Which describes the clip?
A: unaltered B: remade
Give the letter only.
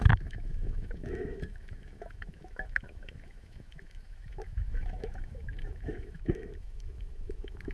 B